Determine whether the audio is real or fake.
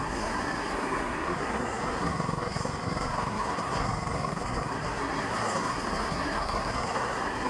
fake